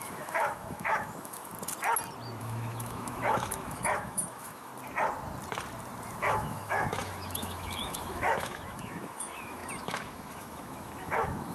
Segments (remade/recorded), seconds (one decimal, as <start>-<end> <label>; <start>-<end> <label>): 0.0-1.5 remade; 1.5-2.4 recorded; 2.4-4.7 remade; 4.7-6.2 recorded; 6.2-11.5 remade